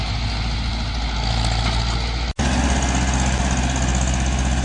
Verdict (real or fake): real